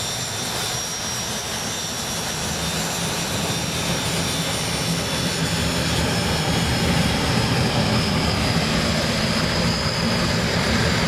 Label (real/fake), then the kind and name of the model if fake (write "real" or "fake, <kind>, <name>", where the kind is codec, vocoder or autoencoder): real